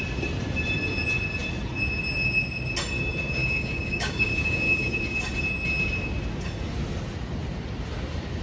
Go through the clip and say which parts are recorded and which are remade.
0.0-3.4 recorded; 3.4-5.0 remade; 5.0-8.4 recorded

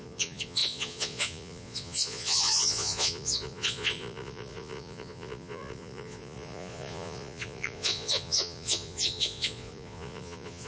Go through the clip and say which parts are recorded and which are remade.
0.0-10.7 remade